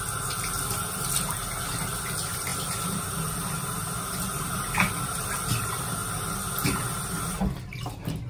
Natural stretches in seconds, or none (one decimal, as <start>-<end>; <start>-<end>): 0.0-8.3